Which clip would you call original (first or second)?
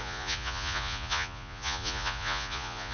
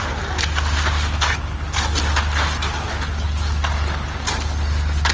second